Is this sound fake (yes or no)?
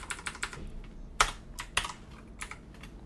no